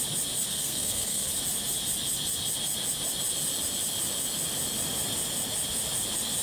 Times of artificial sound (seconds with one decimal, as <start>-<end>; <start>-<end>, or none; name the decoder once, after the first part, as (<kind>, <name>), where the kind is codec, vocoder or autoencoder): 0.5-1.3 (codec, SNAC)